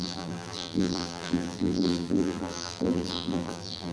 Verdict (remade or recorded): remade